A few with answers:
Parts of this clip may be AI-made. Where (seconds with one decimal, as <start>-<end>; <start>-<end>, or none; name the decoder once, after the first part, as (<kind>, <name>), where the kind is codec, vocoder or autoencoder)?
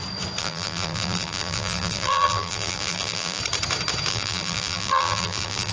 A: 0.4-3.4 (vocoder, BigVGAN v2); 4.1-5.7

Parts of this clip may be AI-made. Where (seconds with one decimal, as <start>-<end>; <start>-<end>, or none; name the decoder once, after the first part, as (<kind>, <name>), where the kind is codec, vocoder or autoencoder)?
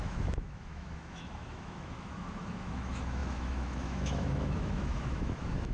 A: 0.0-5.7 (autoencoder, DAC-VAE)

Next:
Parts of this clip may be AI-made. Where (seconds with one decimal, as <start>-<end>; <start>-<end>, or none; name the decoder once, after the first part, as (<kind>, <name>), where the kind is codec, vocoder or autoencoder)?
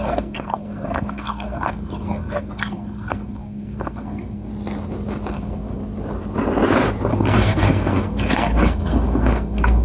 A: 0.0-4.5 (codec, SNAC); 5.3-5.8; 7.1-9.8